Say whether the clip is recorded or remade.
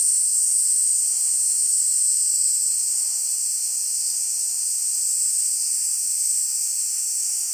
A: remade